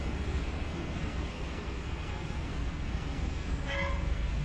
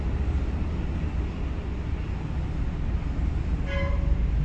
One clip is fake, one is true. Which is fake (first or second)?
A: first